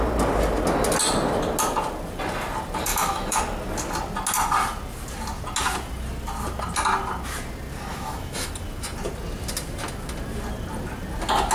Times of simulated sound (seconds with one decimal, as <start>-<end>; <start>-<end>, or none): 2.9-3.4; 7.9-8.5